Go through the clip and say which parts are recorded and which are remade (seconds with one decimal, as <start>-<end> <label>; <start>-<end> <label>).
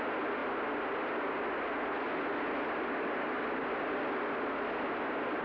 0.0-5.4 recorded